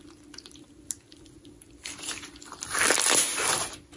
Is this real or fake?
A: real